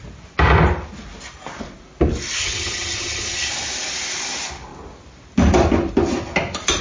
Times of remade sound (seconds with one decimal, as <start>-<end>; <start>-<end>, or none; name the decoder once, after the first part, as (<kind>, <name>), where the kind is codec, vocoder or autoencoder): 2.4-3.5 (vocoder, HiFi-GAN)